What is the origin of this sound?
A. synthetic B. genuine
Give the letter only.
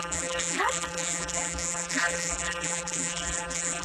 A